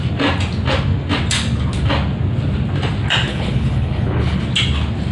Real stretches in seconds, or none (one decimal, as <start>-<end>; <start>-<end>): 0.0-3.3; 4.4-5.1